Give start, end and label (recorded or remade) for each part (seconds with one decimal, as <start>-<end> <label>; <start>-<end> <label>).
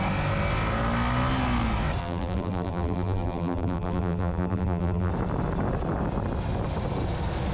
0.0-2.0 recorded; 2.0-5.1 remade; 5.1-7.5 recorded